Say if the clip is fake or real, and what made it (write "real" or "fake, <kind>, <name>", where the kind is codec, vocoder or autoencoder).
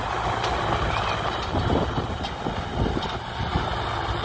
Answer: real